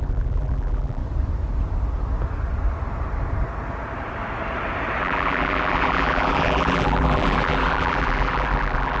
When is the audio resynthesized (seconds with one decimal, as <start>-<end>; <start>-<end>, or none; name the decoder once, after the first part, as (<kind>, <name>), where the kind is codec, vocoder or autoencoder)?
0.0-1.0 (vocoder, BigVGAN v2); 5.0-9.0